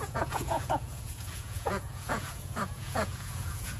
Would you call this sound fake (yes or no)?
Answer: yes